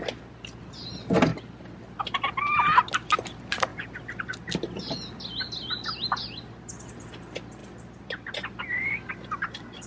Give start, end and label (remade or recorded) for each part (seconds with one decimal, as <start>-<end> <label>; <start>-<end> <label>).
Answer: 0.0-9.9 recorded